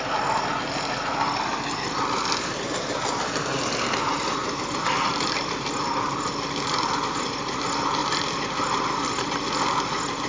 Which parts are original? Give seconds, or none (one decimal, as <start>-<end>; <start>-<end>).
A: 0.0-10.3